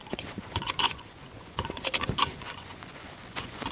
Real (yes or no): no